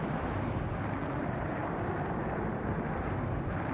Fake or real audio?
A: fake